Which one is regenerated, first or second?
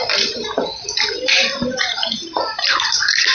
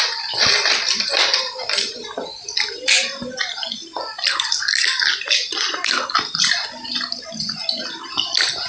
first